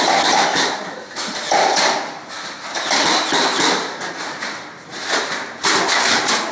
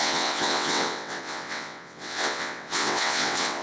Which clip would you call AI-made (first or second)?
second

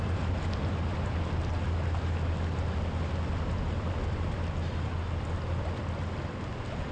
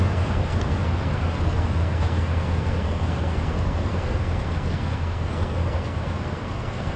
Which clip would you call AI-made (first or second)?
second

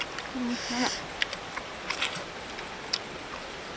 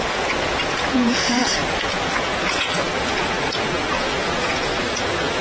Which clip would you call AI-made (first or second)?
second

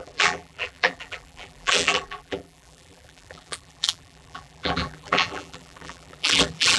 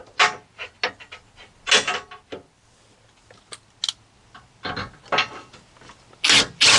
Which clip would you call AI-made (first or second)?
first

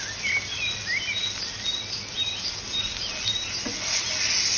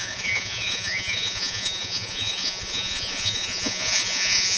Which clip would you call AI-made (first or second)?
second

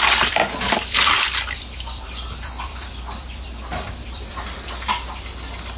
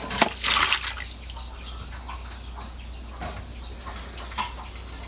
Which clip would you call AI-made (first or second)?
first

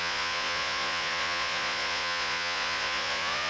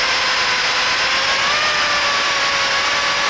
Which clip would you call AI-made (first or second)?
first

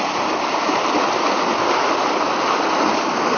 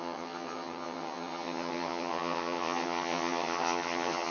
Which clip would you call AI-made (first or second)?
second